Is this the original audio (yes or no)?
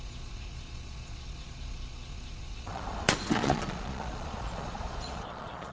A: no